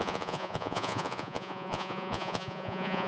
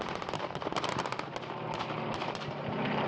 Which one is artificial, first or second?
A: first